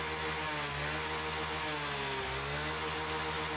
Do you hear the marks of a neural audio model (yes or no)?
no